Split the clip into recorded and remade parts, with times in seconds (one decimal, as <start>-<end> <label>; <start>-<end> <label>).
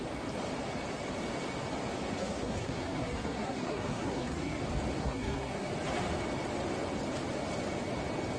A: 0.0-2.2 recorded; 2.2-4.6 remade; 4.6-5.0 recorded; 5.0-5.7 remade; 5.7-8.4 recorded